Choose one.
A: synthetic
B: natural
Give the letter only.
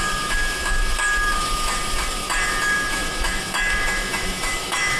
A